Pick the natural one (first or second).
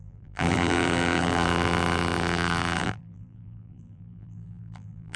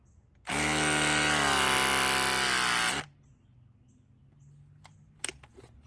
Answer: second